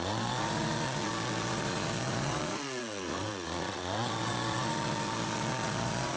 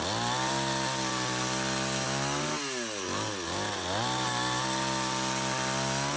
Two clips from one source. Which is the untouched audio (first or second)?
second